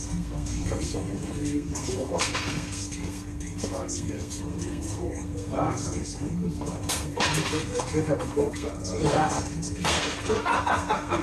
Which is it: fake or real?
fake